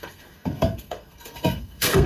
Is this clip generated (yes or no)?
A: yes